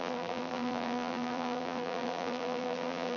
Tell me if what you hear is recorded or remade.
remade